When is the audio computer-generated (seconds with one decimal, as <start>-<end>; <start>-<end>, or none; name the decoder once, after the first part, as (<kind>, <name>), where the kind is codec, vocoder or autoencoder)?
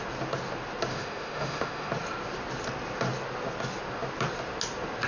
0.9-1.9 (autoencoder, DAC-VAE)